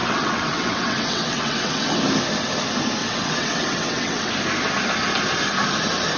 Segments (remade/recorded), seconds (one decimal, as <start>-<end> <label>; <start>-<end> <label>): 0.0-2.0 remade; 2.0-3.0 recorded; 3.0-4.3 remade; 4.3-6.2 recorded